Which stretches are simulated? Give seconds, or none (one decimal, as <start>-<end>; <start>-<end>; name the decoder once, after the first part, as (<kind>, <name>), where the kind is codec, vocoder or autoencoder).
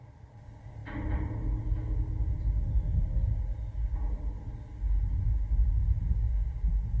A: none